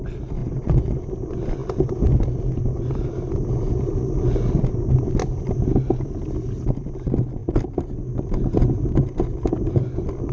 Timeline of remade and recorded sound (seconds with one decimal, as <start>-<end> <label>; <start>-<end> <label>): 0.0-0.4 recorded; 0.4-1.1 remade; 1.1-10.3 recorded